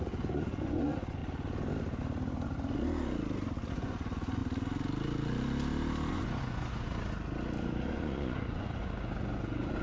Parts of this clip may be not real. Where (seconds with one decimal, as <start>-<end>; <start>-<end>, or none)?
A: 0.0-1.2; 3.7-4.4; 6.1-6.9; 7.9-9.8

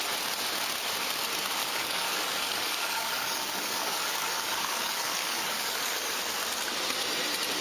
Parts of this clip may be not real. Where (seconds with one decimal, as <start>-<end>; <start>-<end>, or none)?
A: 1.6-6.2

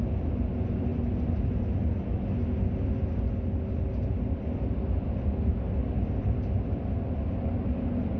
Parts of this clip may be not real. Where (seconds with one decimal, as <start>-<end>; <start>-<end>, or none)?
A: none

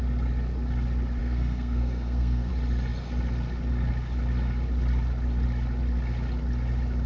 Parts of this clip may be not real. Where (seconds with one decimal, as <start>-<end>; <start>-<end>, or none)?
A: 1.2-2.5

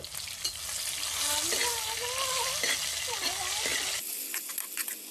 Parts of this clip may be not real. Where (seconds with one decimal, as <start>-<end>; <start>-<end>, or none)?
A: none